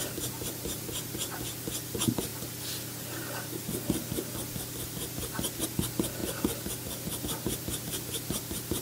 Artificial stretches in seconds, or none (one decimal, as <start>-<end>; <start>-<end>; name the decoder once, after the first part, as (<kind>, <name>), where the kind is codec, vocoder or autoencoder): none

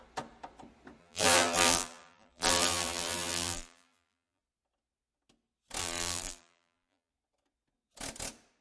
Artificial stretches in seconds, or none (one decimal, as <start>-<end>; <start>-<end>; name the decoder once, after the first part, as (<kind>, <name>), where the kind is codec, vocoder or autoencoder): 1.0-4.4 (vocoder, BigVGAN v2); 5.8-7.1